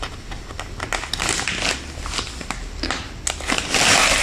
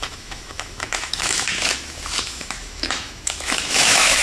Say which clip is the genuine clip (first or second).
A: first